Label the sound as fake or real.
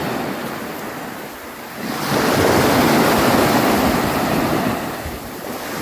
real